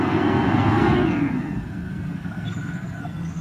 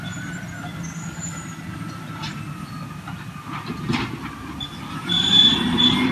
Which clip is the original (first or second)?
second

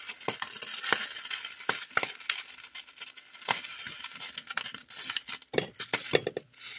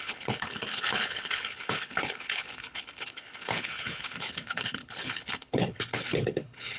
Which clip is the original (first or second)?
first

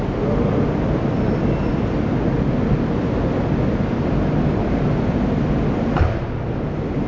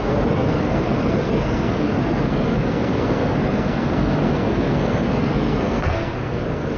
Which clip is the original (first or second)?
first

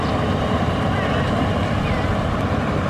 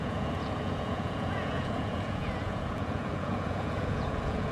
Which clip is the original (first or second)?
first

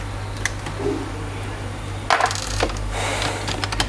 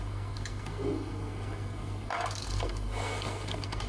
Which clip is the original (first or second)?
first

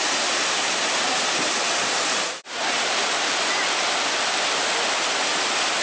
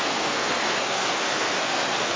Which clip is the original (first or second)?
first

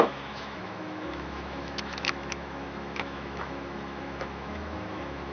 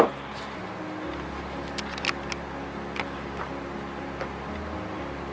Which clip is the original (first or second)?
second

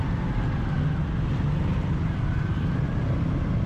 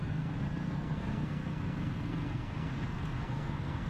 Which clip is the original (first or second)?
first